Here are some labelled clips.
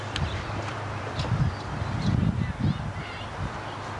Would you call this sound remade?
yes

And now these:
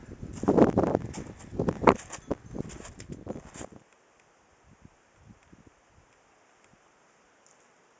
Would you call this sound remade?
no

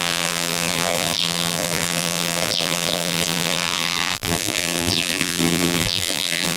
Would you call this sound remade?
yes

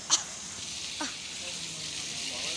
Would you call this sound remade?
no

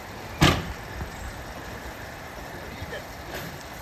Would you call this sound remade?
yes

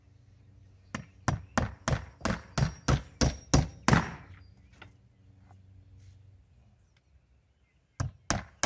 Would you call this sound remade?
no